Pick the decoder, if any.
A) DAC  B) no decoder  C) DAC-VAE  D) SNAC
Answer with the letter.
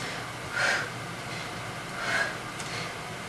B